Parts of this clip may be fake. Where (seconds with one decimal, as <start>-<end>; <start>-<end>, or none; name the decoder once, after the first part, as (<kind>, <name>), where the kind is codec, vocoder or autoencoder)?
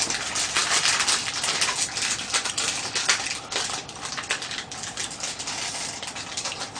none